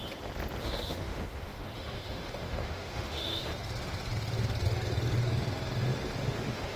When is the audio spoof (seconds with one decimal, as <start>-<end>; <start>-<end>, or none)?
0.6-3.5; 6.3-6.8